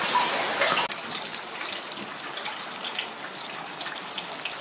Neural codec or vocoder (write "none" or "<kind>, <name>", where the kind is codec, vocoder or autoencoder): none